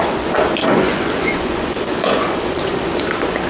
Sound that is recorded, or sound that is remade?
remade